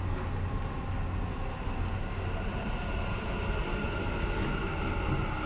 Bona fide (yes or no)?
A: yes